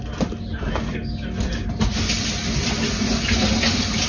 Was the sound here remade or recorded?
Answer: recorded